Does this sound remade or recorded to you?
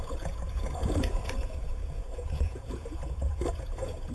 remade